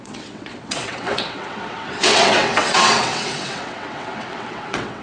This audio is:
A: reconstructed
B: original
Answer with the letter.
A